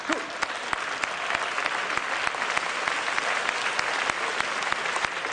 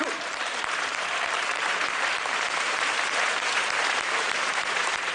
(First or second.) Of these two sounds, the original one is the first